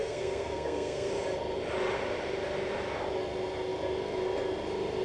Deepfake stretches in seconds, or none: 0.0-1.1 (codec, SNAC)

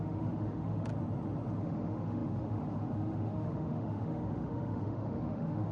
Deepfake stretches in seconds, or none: 0.0-0.9 (autoencoder, DAC-VAE); 1.6-5.7

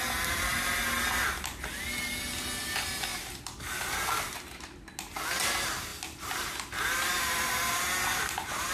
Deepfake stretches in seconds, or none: 3.1-4.6 (vocoder, BigVGAN v2)

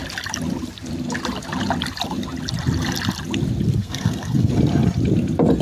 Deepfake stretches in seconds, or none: 3.8-4.5 (codec, SNAC)

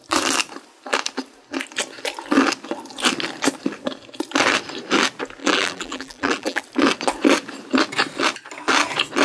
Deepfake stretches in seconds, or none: 5.4-6.6 (vocoder, BigVGAN v2)

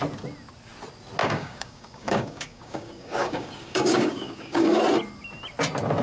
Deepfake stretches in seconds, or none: 1.2-4.8 (codec, DAC)

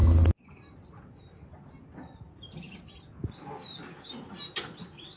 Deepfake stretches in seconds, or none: none